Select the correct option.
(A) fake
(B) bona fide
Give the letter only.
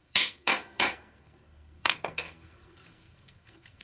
A